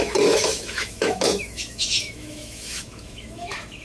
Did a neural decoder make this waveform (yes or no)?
yes